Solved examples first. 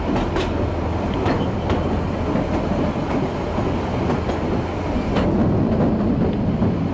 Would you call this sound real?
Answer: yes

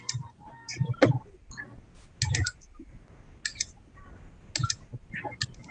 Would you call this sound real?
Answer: yes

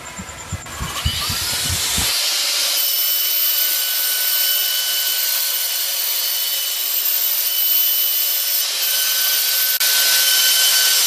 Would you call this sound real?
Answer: yes